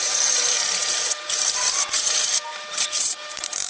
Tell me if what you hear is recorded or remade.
remade